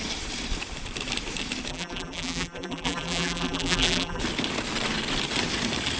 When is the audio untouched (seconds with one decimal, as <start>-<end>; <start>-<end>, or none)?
0.0-1.7; 4.2-6.0